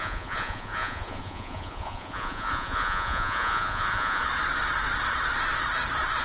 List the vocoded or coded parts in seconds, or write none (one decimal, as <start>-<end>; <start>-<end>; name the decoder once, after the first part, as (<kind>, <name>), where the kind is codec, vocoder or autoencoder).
0.0-4.2 (vocoder, Vocos)